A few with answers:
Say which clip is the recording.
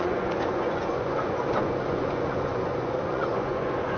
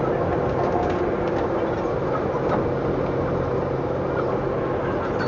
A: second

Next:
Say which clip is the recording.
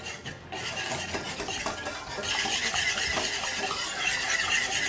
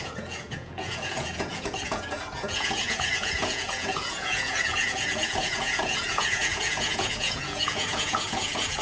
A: first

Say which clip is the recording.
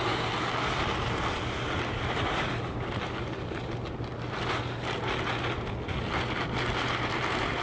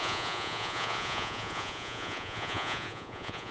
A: first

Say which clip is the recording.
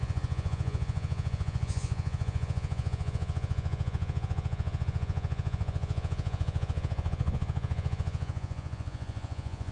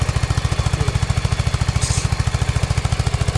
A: second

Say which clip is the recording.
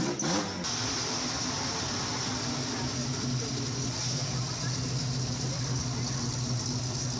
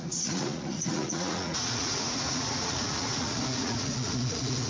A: first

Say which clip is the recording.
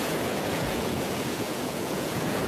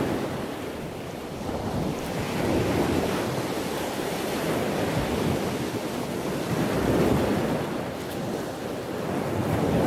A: second